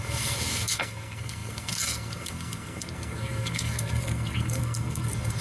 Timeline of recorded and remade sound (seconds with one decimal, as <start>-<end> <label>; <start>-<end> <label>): 0.0-5.4 remade